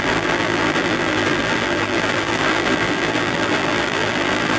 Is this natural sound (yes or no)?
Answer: no